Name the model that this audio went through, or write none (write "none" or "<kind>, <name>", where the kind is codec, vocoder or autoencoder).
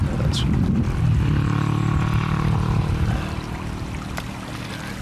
none